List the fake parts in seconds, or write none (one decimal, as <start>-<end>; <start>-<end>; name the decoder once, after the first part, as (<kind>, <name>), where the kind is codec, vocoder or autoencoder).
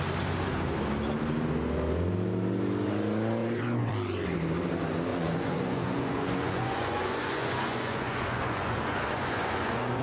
3.4-3.9 (vocoder, Vocos); 5.1-10.0